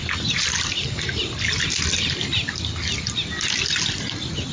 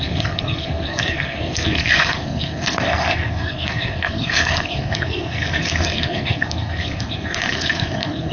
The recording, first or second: first